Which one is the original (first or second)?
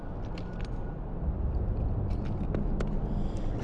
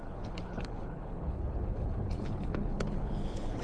first